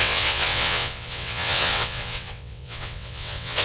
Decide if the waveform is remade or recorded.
remade